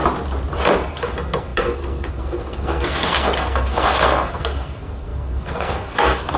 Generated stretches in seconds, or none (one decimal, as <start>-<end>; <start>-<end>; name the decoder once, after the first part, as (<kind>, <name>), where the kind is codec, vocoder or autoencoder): 0.9-6.4 (codec, SNAC)